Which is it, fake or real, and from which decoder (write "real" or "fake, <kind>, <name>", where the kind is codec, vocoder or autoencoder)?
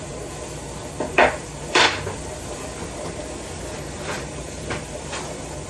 fake, vocoder, BigVGAN v2